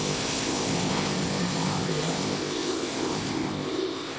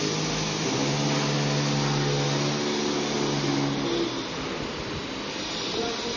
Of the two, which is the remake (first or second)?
first